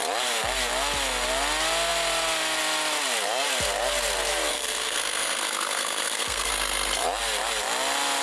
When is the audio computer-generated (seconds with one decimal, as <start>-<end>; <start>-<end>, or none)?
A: 4.5-6.5